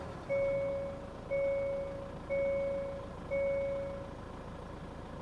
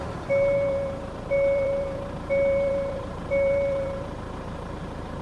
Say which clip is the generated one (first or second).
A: second